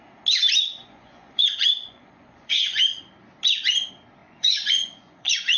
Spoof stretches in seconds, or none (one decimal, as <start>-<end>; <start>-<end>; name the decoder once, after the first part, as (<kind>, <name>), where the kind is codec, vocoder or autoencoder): 0.8-2.8 (vocoder, Vocos); 4.2-5.6